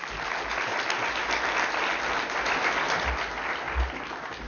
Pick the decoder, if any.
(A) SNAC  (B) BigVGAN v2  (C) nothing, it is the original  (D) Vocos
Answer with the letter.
C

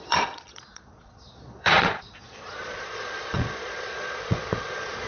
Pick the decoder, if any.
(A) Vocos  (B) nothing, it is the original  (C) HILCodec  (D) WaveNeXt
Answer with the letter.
A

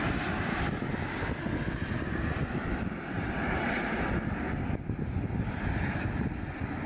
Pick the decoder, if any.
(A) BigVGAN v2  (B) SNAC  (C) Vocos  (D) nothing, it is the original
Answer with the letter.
D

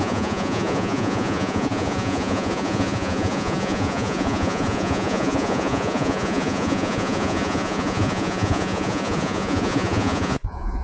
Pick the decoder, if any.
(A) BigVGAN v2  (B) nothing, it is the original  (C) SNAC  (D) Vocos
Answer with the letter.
D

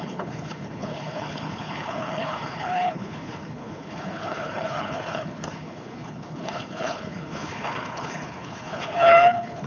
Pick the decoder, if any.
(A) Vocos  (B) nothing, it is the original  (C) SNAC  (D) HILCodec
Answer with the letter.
D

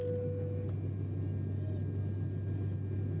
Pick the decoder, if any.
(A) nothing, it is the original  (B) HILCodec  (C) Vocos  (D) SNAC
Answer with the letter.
A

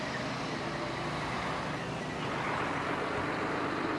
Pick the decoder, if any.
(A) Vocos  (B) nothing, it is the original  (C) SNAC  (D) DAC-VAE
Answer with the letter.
B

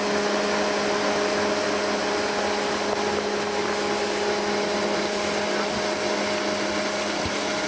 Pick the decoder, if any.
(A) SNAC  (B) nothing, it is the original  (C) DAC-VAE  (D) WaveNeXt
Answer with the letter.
B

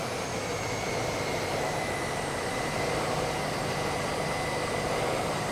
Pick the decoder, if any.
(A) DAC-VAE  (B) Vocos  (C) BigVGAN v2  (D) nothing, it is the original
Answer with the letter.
C